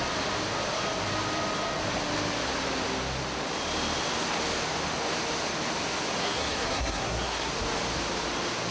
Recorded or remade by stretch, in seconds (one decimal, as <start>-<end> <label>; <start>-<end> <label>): 0.0-6.2 recorded; 6.2-7.5 remade; 7.5-8.7 recorded